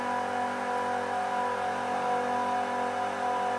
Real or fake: real